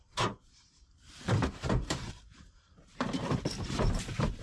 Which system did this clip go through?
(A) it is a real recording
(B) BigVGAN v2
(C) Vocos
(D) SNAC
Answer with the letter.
B